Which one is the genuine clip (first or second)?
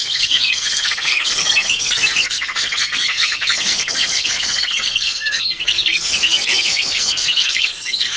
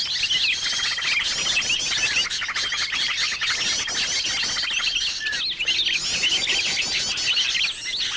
second